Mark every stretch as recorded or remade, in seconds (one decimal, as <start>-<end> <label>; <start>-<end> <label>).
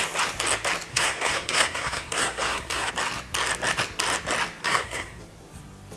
0.0-0.9 recorded; 0.9-2.9 remade; 2.9-4.6 recorded; 4.6-5.2 remade; 5.2-6.0 recorded